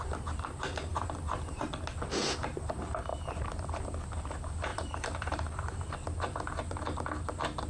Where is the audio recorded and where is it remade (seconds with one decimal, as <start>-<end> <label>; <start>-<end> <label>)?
0.0-0.9 recorded; 0.9-1.6 remade; 1.6-4.7 recorded; 4.7-5.9 remade; 5.9-7.7 recorded